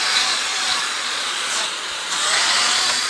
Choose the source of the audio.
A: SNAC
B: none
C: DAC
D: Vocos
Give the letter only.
D